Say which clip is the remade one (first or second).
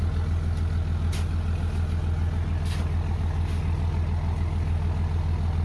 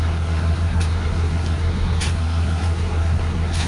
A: second